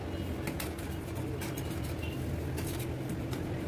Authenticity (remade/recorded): recorded